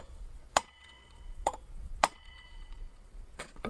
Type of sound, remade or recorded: remade